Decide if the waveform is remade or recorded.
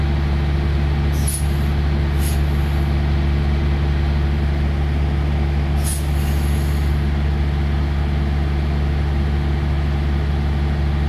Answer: recorded